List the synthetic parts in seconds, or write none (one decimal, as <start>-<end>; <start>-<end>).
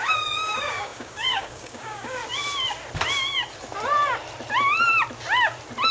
0.0-2.2